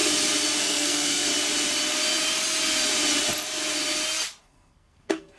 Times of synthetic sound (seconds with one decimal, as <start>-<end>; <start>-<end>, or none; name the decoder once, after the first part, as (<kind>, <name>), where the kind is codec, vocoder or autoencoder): 0.6-1.3 (codec, SNAC); 4.4-5.4